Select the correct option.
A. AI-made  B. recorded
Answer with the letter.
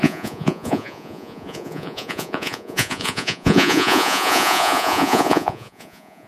A